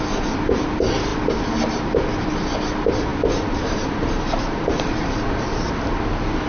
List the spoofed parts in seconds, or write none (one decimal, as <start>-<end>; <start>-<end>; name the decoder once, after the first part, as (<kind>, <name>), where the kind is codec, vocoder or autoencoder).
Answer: 3.1-5.1 (vocoder, BigVGAN v2)

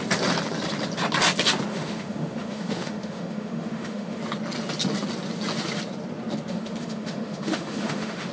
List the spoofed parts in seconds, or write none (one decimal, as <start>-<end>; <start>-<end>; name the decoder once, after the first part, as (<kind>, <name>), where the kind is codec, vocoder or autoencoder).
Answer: 1.7-4.2 (autoencoder, DAC-VAE); 6.5-8.3

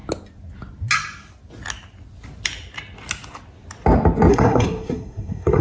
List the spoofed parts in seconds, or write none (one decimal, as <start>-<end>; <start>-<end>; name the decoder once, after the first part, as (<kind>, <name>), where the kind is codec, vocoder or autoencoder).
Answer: 4.3-5.6 (codec, SNAC)

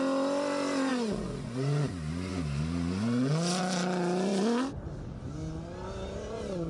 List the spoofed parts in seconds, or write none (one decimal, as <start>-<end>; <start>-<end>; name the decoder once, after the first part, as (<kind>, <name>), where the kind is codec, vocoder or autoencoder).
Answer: 0.9-1.9 (vocoder, Vocos)

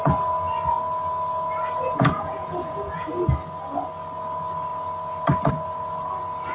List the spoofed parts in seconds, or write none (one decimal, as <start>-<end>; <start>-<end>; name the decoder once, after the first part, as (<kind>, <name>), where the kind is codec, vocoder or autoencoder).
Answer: 1.9-3.1 (vocoder, Vocos)

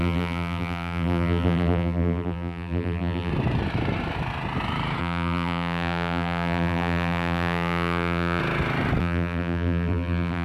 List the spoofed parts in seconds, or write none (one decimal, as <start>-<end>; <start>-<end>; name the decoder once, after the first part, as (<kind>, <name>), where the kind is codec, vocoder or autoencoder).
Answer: 0.0-3.3 (vocoder, BigVGAN v2); 5.0-8.4; 9.0-10.4

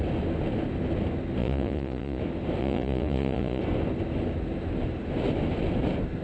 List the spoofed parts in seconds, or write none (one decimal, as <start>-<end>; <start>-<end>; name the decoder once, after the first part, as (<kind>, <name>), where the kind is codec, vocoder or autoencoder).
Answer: 1.4-2.2 (vocoder, Vocos); 2.6-3.6